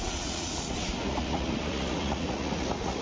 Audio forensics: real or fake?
fake